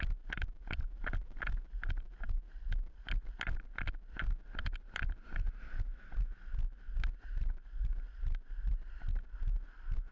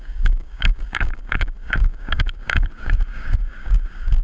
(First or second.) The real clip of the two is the first